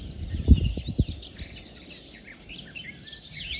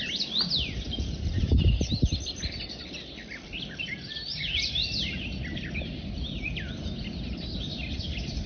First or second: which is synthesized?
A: second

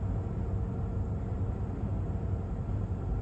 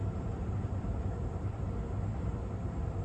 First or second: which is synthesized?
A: second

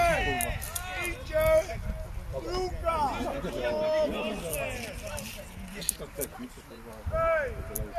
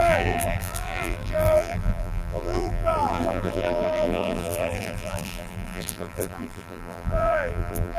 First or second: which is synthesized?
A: second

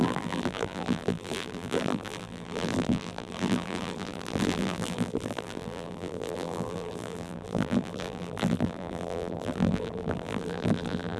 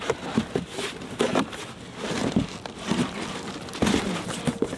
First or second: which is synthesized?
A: first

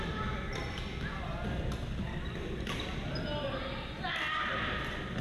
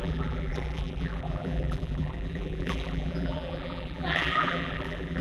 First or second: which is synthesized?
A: second